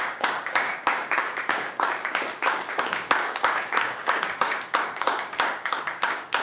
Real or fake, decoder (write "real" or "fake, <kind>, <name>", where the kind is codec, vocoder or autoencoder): fake, codec, DAC